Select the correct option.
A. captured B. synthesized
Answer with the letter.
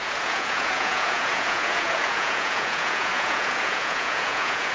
B